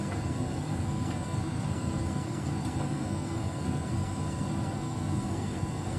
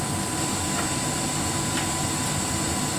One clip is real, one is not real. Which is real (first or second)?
second